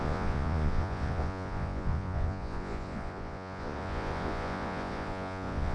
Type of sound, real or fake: fake